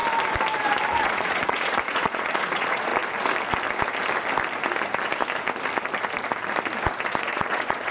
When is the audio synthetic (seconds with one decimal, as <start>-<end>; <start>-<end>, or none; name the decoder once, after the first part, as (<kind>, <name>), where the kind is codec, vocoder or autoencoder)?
1.0-2.9 (vocoder, Vocos); 7.2-7.9